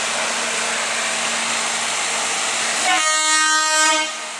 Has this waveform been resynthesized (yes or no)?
no